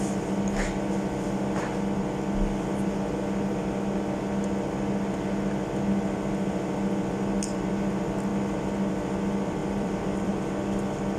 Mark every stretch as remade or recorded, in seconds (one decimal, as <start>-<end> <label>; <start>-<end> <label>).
0.0-9.6 recorded; 9.6-10.3 remade; 10.3-11.2 recorded